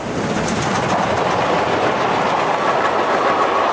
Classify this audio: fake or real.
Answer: real